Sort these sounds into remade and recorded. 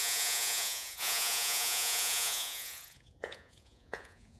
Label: remade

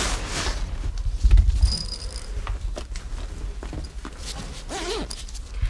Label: recorded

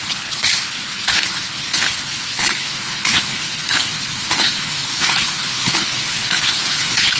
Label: remade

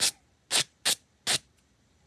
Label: recorded